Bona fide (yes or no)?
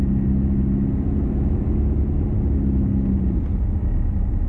yes